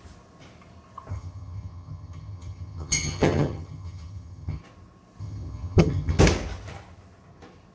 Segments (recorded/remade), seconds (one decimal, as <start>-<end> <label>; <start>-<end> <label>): 0.0-1.1 recorded; 1.1-4.6 remade; 4.6-5.2 recorded; 5.2-6.2 remade; 6.2-7.7 recorded